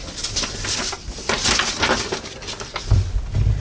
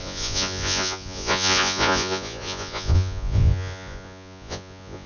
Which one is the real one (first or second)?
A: first